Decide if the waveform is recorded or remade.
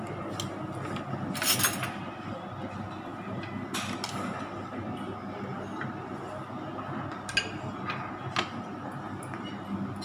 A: recorded